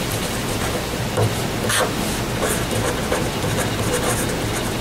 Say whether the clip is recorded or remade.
recorded